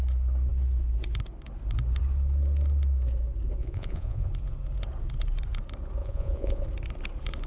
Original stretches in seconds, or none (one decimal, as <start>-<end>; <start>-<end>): 0.0-3.6; 4.3-6.0; 6.6-7.5